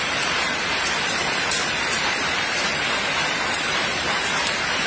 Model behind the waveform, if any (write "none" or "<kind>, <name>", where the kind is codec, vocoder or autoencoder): vocoder, BigVGAN v2